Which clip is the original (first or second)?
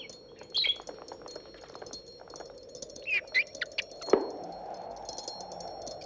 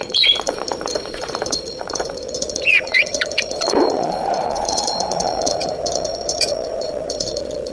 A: first